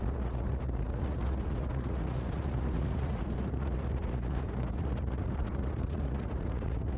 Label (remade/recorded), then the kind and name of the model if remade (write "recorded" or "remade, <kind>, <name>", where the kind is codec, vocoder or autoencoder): remade, vocoder, Vocos